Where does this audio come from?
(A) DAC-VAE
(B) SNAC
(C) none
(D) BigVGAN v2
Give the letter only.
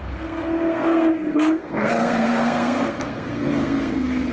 B